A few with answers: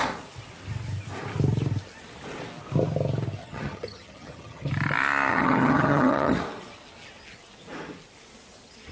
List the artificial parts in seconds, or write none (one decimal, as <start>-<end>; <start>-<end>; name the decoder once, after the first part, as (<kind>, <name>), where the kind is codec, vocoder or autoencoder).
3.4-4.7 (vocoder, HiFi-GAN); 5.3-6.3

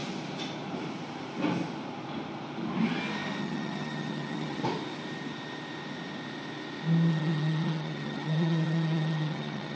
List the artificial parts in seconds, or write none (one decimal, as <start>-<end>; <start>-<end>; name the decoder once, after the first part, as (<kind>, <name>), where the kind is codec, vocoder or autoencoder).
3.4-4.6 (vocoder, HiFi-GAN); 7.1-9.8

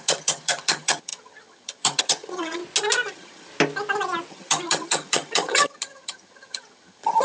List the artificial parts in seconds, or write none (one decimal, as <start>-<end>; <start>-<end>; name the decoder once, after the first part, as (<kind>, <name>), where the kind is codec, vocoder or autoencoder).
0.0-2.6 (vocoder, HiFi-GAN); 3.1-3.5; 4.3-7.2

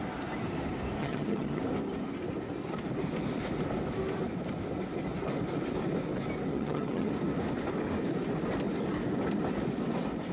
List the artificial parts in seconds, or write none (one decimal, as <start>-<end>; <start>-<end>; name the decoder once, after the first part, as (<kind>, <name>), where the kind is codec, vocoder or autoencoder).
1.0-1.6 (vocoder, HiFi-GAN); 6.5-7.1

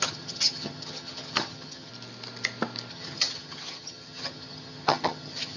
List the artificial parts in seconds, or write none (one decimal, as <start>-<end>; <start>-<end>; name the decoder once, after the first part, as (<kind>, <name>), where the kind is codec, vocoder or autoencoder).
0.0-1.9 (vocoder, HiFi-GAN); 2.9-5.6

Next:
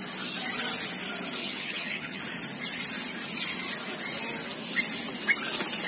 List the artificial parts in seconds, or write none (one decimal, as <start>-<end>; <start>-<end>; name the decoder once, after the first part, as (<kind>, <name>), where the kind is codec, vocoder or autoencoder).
1.4-2.2 (vocoder, HiFi-GAN)

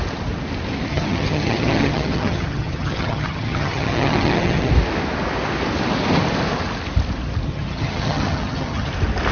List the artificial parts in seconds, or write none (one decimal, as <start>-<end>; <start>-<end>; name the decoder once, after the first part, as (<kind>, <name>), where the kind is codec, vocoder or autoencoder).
0.9-4.7 (vocoder, HiFi-GAN); 7.5-8.9

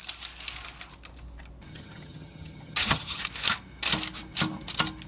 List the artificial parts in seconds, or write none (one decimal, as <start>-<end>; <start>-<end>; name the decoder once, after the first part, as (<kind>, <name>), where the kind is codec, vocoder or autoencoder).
1.7-3.2 (vocoder, HiFi-GAN)